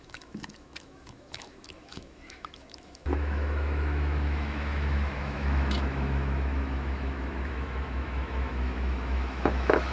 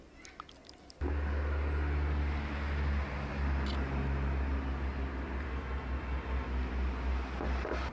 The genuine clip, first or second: second